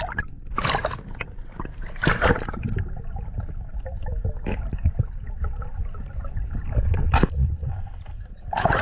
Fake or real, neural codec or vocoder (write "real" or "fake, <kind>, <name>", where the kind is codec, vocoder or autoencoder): real